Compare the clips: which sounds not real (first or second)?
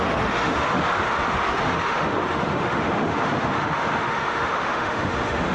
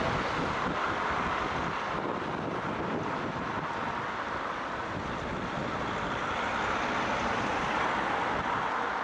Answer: first